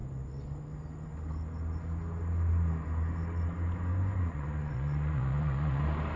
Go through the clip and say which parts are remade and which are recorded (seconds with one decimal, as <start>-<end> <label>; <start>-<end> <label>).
0.0-3.9 recorded; 3.9-5.8 remade; 5.8-6.2 recorded